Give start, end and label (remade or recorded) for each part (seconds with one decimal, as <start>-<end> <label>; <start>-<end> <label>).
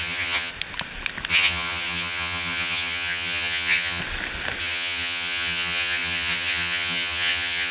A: 0.0-0.5 remade; 0.5-1.3 recorded; 1.3-4.0 remade; 4.0-4.6 recorded; 4.6-7.7 remade